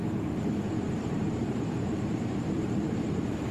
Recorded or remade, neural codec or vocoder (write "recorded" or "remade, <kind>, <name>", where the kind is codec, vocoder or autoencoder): remade, vocoder, BigVGAN v2